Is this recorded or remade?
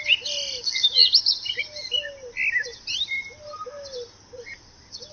recorded